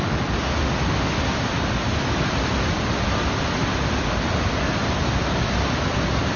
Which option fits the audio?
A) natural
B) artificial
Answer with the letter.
A